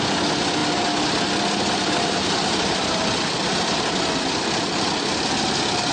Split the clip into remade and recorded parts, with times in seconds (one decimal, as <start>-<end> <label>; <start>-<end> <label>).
0.0-5.9 recorded